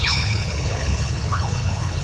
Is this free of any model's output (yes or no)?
no